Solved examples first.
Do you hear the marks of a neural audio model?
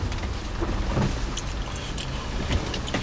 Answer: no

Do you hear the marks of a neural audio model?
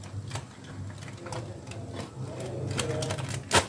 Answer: no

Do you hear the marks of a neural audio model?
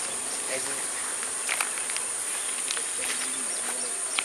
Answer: no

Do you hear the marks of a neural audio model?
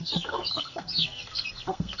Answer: yes